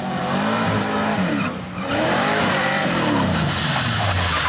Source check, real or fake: fake